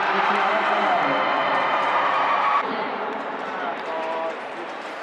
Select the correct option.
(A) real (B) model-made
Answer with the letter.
B